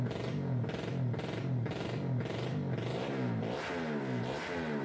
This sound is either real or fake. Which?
real